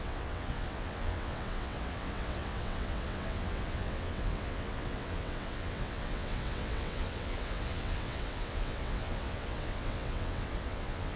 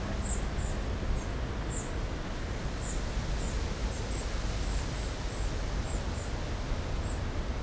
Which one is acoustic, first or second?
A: second